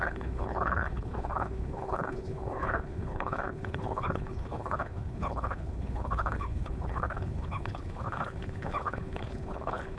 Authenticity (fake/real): fake